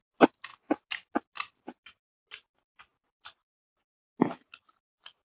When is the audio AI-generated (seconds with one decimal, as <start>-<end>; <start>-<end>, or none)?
none